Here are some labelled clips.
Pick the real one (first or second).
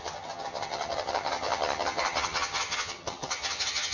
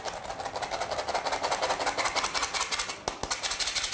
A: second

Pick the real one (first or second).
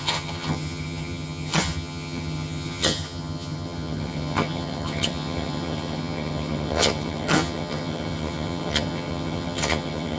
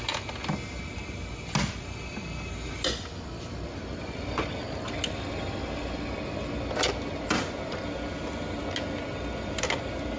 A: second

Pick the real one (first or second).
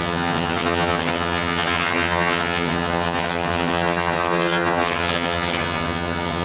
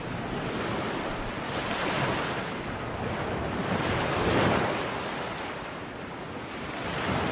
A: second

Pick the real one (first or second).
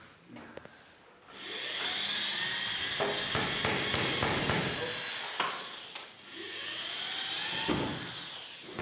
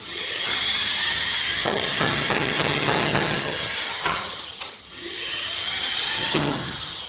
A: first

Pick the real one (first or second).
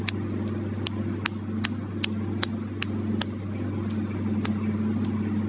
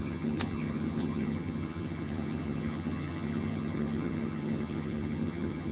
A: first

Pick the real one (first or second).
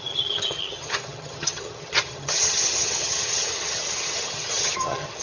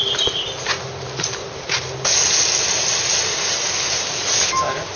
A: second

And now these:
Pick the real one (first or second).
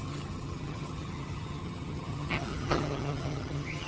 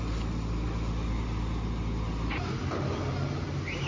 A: second